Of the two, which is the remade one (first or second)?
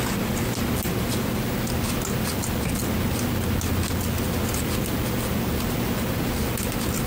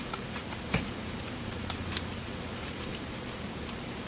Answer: second